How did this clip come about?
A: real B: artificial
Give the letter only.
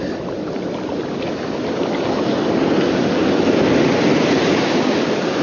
A